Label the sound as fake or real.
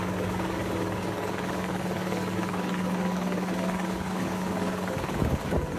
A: fake